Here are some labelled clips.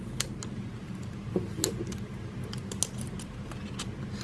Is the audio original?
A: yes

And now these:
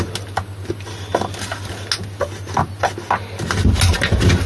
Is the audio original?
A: yes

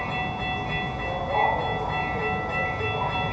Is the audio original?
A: yes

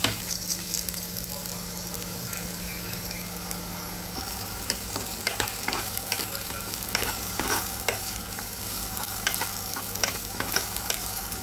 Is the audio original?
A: no